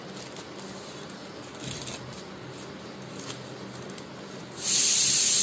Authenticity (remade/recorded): recorded